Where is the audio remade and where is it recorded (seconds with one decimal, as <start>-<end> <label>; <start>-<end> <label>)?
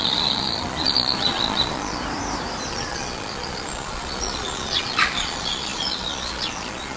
0.0-2.0 remade; 2.0-2.7 recorded; 2.7-7.0 remade